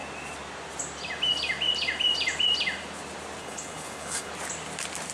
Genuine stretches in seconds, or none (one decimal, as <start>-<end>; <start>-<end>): 0.0-3.4; 4.3-5.1